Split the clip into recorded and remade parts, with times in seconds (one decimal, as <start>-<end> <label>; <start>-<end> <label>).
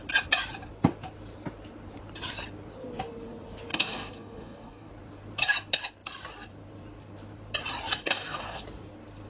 0.0-3.7 recorded; 3.7-4.9 remade; 4.9-8.0 recorded; 8.0-8.6 remade; 8.6-9.3 recorded